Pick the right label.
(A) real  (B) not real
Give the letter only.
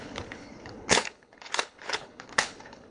B